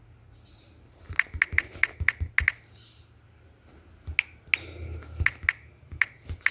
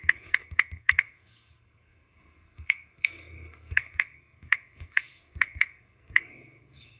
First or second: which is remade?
second